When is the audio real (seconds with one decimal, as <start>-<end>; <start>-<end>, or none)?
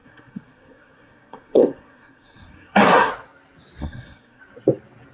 3.1-3.8; 4.4-5.1